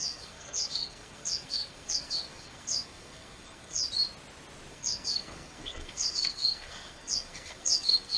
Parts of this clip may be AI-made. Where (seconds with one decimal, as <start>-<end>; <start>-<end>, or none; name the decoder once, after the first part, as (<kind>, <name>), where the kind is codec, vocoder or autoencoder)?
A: 0.0-3.8 (codec, SNAC); 4.7-8.2